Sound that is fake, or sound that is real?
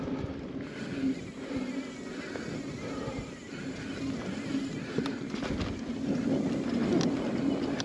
real